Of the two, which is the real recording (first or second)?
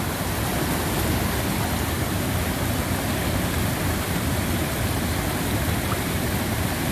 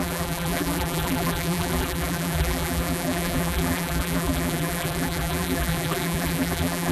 first